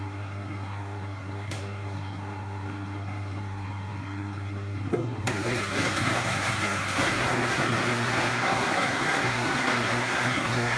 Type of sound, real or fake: fake